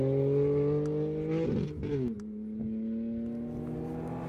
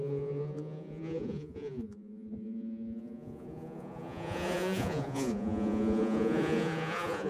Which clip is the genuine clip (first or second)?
first